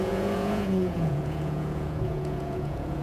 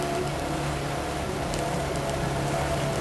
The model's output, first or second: first